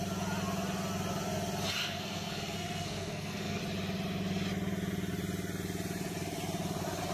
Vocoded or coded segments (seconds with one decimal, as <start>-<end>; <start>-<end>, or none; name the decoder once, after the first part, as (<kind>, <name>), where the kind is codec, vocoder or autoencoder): 1.8-3.6 (codec, SNAC)